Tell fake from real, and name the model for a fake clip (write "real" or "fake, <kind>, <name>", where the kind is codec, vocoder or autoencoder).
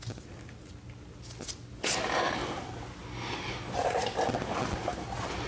real